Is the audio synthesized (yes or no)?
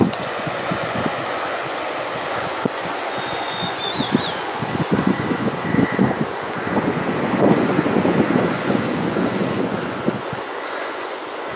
yes